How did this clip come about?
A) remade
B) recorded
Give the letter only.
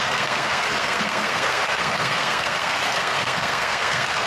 A